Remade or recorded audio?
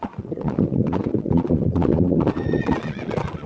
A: remade